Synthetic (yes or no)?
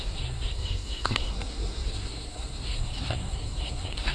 yes